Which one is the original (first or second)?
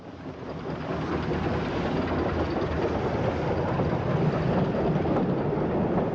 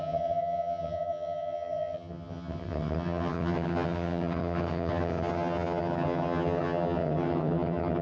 first